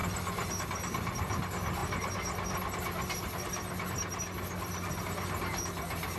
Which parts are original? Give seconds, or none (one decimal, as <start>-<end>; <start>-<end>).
0.5-6.2